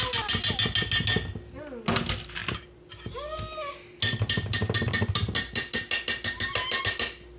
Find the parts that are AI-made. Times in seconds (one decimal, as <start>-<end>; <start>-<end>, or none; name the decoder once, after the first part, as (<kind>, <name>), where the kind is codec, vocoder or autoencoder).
none